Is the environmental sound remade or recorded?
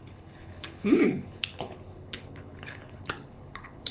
remade